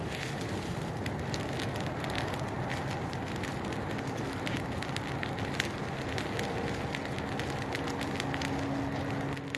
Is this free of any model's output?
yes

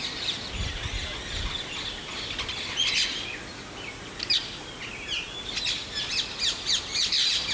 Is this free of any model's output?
yes